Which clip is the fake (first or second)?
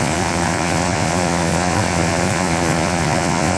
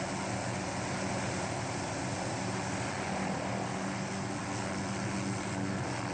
first